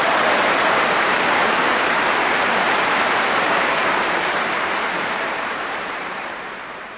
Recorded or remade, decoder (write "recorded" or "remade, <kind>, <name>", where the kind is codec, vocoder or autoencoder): remade, vocoder, BigVGAN v2